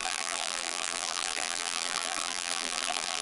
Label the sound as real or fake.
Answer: fake